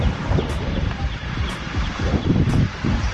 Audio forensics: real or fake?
fake